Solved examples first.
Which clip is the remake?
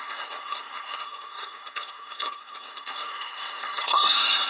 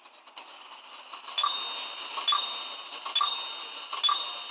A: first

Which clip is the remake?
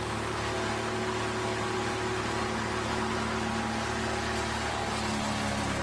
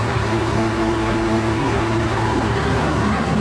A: second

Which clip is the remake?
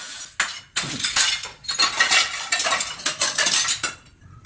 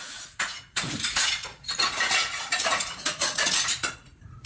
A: second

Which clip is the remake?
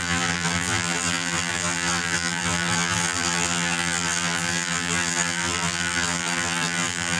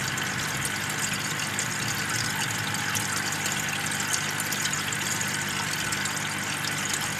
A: first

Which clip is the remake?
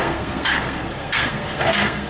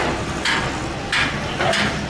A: first